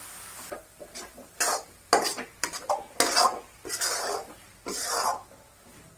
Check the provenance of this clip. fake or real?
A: real